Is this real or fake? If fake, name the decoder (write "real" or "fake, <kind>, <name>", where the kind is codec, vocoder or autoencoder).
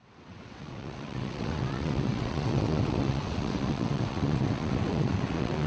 fake, vocoder, WaveNeXt